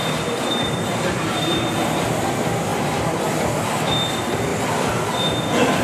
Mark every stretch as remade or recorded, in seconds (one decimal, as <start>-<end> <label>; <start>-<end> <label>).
0.0-1.0 remade; 1.0-2.7 recorded; 2.7-3.9 remade; 3.9-4.5 recorded; 4.5-5.2 remade; 5.2-5.8 recorded